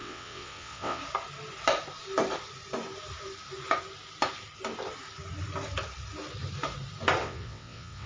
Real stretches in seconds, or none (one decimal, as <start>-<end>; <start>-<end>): 1.0-7.2